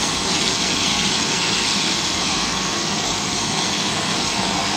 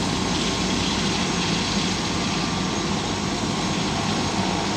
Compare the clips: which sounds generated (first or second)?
first